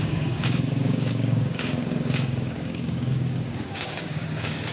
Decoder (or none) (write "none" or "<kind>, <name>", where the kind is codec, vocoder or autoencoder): codec, DAC